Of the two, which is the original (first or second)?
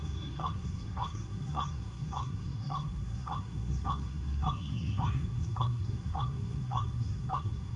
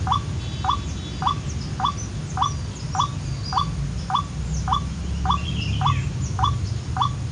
second